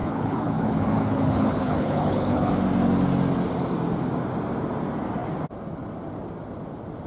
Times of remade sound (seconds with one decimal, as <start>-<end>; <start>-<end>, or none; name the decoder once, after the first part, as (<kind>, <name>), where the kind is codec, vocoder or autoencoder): 0.0-2.5 (codec, HILCodec)